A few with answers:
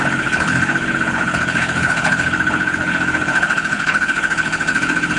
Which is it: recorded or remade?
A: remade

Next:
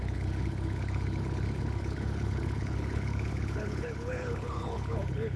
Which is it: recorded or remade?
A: remade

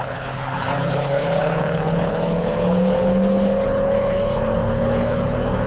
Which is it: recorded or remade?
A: remade